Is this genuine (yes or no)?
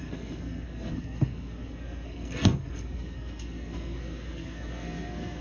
no